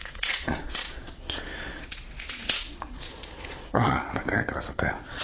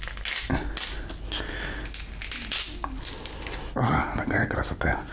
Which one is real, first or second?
second